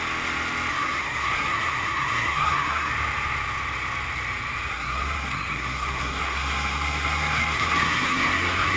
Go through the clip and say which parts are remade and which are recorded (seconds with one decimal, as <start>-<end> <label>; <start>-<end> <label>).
0.0-0.7 recorded; 0.7-2.9 remade; 2.9-4.7 recorded; 4.7-8.8 remade